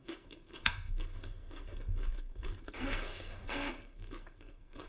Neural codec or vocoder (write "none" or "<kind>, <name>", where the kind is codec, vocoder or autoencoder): codec, SNAC